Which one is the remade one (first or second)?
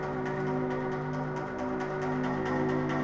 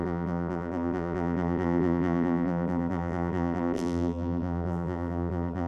second